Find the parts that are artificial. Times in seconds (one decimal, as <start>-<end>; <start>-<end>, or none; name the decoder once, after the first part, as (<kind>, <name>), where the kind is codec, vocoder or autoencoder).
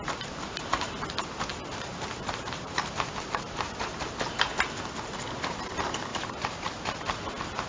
1.5-4.0 (vocoder, BigVGAN v2); 6.1-7.3